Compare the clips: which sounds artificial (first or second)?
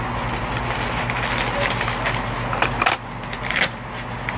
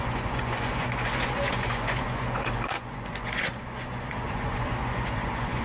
second